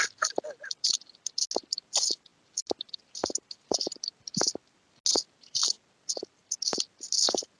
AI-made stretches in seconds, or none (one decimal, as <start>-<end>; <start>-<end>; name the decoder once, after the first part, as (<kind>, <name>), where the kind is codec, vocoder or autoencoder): none